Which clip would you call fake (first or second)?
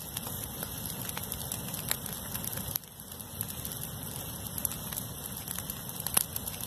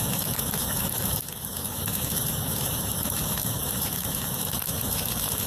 second